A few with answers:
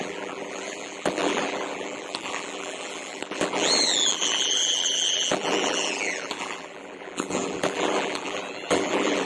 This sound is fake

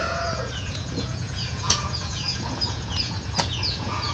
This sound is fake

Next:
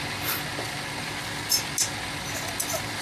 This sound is real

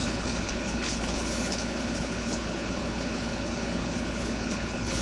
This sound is fake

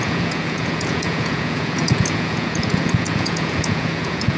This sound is fake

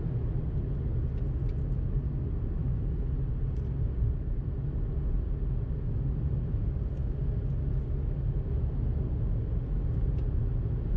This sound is real